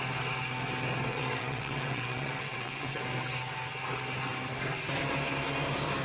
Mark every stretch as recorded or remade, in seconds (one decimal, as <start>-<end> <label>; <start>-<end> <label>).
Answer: 0.0-1.1 recorded; 1.1-3.0 remade; 3.0-6.0 recorded